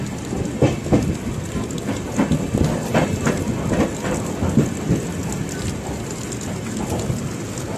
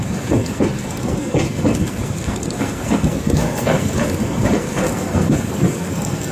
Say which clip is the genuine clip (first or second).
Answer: first